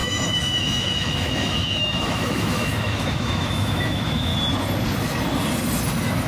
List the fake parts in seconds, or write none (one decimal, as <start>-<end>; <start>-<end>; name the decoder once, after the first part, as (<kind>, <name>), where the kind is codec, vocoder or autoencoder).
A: 0.0-4.3 (autoencoder, DAC-VAE)